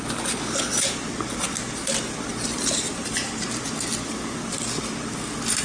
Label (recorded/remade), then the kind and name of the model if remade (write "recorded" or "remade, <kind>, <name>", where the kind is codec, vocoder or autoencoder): recorded